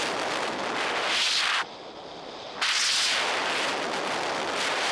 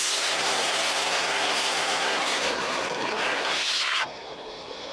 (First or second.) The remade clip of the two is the second